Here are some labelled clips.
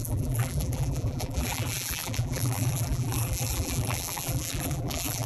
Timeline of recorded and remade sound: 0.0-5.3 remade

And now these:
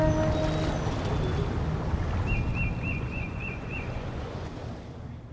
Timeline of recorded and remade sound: 0.0-2.9 recorded; 2.9-4.5 remade; 4.5-5.3 recorded

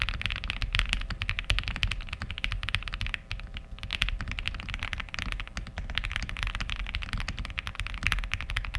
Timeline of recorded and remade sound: 0.0-8.8 recorded